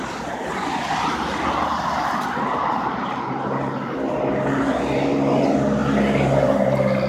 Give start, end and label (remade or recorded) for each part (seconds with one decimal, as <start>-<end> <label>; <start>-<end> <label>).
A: 0.0-7.1 recorded